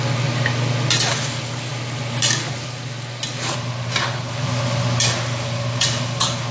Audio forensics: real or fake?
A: real